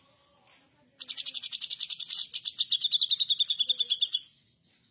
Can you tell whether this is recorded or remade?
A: recorded